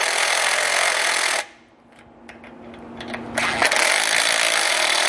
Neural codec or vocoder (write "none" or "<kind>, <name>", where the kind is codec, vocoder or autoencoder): none